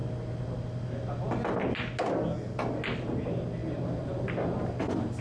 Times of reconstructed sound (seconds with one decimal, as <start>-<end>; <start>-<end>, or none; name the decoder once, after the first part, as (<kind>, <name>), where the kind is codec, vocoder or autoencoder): 3.6-4.1 (vocoder, BigVGAN v2)